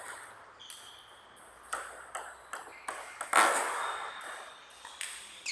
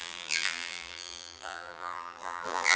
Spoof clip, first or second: second